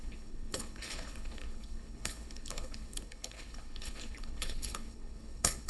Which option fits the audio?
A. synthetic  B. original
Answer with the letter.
A